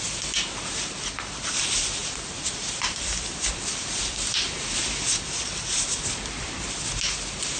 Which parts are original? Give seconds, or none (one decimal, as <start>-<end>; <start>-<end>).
0.0-2.0; 6.6-7.6